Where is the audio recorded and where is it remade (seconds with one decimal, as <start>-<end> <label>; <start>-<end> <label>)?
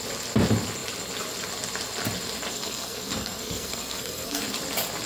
0.0-2.5 recorded; 2.5-4.4 remade; 4.4-5.1 recorded